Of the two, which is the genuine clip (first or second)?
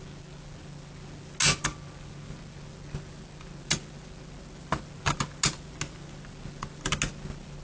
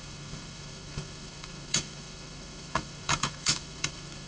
first